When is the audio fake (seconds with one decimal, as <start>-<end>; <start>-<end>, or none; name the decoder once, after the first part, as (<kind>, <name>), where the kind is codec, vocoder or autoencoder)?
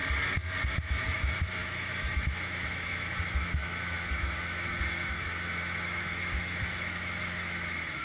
0.7-8.0 (autoencoder, DAC-VAE)